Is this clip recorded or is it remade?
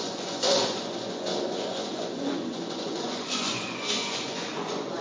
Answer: remade